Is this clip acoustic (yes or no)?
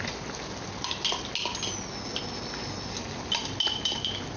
yes